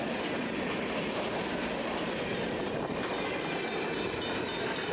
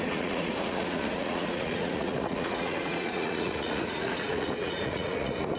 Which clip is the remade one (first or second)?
second